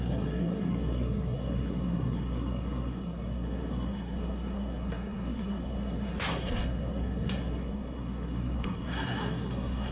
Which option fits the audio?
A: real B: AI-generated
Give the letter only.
B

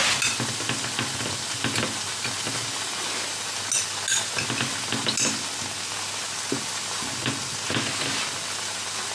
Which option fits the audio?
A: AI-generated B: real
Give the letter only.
B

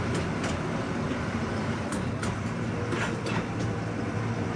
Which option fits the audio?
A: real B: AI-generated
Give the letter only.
A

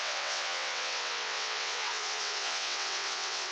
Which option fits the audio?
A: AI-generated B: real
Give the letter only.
A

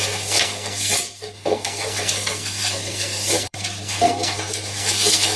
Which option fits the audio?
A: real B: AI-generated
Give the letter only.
B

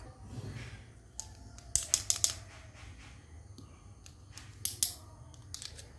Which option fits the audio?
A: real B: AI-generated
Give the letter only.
A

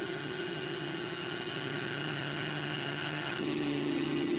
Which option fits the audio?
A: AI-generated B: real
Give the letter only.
A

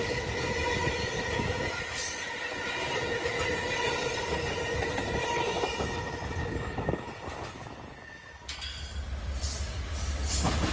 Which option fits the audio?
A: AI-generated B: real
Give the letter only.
B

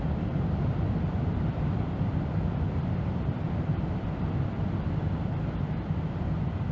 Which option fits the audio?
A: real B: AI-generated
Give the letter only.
B